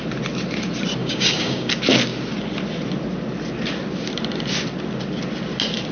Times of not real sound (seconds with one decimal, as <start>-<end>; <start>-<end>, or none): 1.0-1.7